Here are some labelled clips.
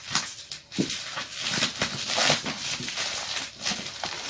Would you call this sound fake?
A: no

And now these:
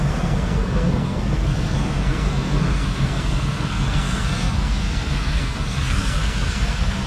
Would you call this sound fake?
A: yes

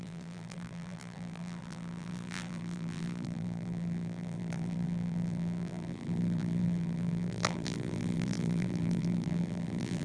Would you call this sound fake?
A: yes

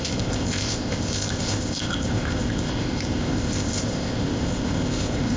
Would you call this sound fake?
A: yes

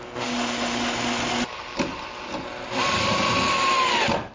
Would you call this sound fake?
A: no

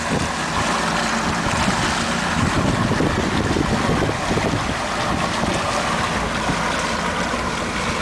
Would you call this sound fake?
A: no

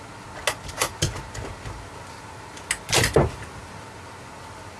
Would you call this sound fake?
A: no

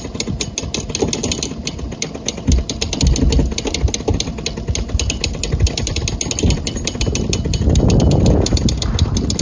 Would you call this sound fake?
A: no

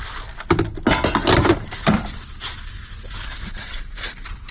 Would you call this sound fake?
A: no